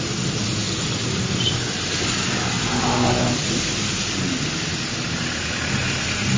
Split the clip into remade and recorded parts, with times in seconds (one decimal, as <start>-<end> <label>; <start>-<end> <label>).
0.0-6.4 recorded